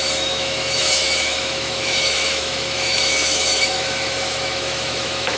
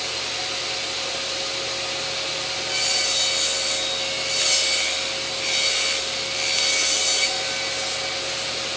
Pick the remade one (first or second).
first